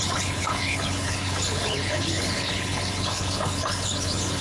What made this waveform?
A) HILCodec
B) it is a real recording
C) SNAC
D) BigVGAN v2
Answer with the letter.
A